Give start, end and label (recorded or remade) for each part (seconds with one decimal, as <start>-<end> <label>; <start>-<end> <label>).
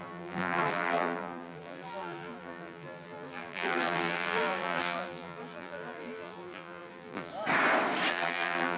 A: 0.0-7.3 remade; 7.3-8.1 recorded; 8.1-8.8 remade